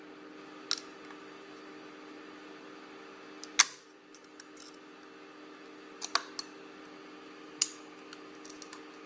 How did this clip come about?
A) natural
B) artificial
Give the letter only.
A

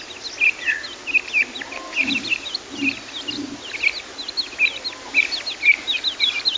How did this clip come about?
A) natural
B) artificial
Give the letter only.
A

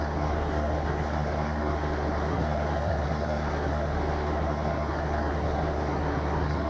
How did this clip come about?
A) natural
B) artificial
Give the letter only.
B